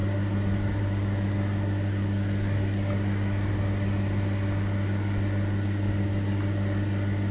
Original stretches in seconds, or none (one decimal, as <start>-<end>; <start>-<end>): 0.8-7.3

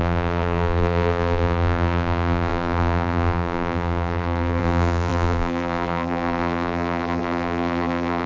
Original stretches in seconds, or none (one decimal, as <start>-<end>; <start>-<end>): none

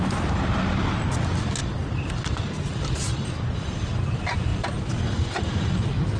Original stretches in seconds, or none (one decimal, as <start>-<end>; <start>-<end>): 0.0-6.2

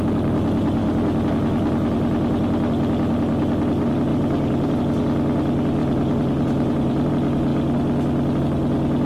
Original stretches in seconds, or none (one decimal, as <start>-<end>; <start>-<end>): 0.0-4.1; 4.8-5.8; 7.1-9.1

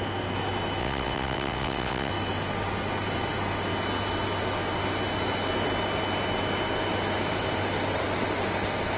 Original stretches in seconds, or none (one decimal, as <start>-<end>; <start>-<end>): 0.0-0.8; 2.1-9.0

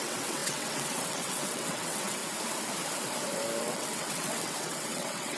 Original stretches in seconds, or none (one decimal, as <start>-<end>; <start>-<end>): 2.2-3.6

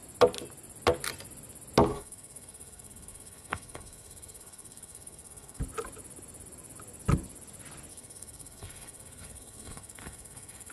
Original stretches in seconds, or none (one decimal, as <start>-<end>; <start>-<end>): 0.0-1.9; 5.6-7.9

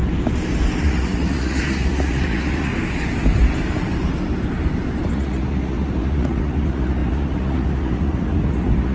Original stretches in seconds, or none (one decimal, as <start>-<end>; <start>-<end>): 0.0-0.8; 2.7-5.1